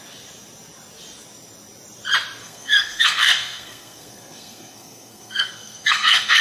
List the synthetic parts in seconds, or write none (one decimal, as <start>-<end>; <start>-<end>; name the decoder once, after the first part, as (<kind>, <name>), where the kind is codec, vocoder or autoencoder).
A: 2.4-6.4 (codec, SNAC)

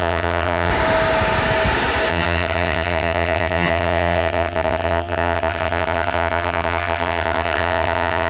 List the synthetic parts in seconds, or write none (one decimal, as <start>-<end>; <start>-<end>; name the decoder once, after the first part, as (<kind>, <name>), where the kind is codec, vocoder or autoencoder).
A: 0.0-0.7 (vocoder, HiFi-GAN); 2.1-8.3

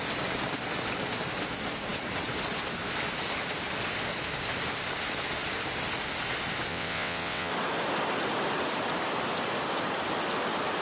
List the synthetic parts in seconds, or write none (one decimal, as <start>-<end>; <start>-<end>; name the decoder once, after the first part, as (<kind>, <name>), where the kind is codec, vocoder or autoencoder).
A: 6.7-7.5 (vocoder, WaveNeXt)

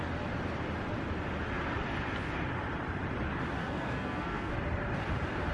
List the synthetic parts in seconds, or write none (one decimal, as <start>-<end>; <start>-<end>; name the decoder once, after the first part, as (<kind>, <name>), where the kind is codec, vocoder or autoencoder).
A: 3.6-4.5 (codec, SNAC)

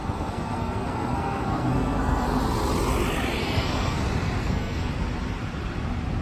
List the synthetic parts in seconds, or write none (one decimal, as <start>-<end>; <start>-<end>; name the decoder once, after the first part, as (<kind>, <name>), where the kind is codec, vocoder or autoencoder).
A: 0.0-2.4 (codec, SNAC); 3.4-4.0; 4.4-4.9